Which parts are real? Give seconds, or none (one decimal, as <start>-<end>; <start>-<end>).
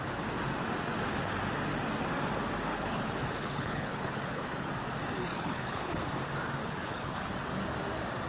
0.0-2.7; 4.7-5.3; 6.1-6.6; 7.3-8.3